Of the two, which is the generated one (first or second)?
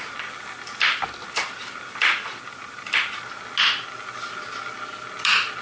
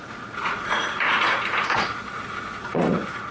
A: second